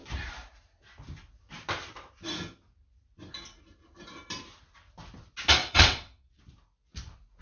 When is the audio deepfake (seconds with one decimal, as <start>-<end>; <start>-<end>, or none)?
5.6-6.4